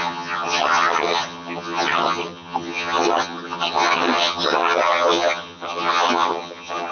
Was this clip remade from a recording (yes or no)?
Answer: yes